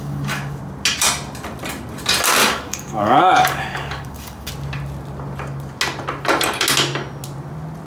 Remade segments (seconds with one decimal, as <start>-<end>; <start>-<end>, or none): 0.0-0.6; 2.4-4.5